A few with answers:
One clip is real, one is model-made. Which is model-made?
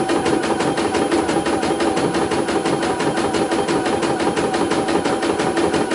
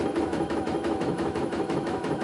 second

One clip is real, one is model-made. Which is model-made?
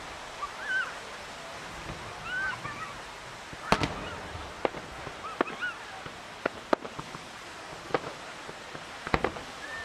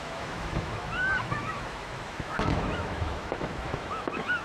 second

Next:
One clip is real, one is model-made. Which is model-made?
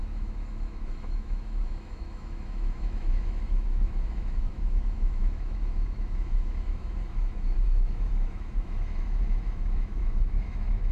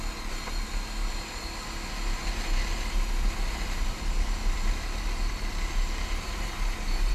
first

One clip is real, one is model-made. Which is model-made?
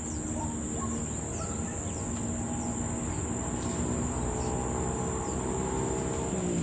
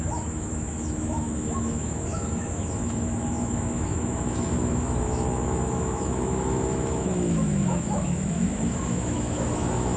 second